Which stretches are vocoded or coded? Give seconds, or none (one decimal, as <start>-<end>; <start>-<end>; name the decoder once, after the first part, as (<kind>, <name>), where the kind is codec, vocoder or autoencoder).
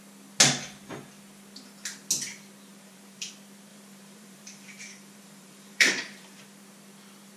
2.7-3.3 (vocoder, BigVGAN v2); 3.7-6.4